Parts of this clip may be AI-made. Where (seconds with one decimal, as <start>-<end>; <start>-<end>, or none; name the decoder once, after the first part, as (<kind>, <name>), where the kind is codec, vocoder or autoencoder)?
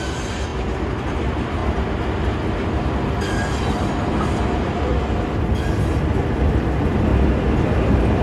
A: 0.0-1.6 (vocoder, BigVGAN v2); 3.7-4.9; 5.8-7.1; 7.6-8.2